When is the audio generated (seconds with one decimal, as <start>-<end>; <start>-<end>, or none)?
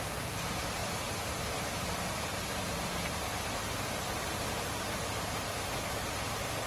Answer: none